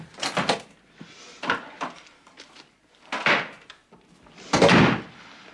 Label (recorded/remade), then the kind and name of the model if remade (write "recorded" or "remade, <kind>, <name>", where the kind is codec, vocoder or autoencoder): recorded